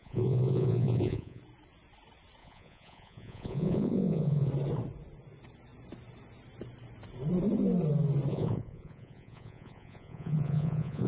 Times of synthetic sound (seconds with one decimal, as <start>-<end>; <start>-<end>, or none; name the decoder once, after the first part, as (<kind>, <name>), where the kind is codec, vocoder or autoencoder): 0.0-1.4 (vocoder, Vocos); 2.4-4.5; 8.3-11.1